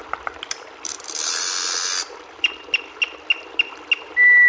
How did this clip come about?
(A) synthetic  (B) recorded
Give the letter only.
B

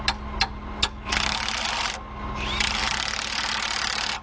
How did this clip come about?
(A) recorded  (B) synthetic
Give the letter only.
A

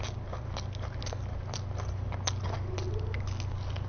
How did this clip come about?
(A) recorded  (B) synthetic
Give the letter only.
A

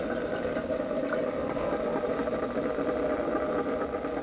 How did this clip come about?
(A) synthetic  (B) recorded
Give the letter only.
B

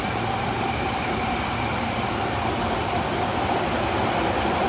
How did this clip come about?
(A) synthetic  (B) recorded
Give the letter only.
B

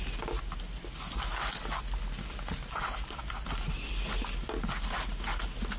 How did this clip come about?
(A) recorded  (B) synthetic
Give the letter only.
A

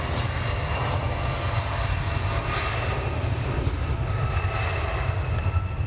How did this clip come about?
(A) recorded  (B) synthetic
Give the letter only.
A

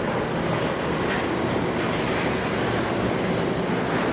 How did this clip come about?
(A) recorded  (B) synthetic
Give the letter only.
A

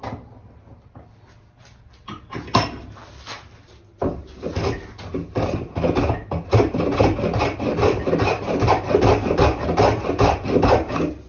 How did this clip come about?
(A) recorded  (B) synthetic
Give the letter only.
A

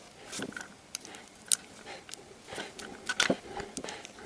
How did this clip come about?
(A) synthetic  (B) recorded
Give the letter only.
B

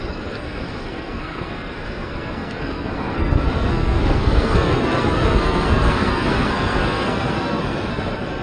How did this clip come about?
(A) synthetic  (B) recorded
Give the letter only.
A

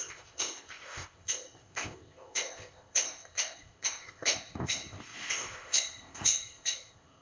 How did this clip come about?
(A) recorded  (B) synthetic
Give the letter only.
B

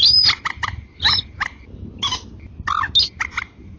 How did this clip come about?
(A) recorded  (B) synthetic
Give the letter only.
A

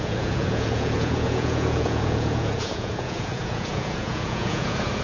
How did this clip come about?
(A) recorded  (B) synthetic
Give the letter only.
B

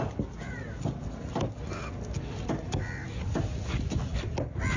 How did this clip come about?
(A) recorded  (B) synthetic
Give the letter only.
A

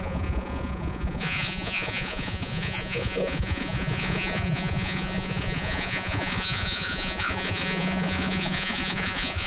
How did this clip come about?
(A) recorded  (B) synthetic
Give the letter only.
B